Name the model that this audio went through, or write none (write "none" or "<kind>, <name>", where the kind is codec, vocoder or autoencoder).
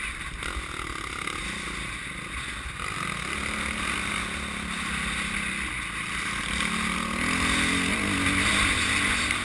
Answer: none